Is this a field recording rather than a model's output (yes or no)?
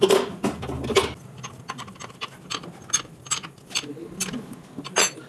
yes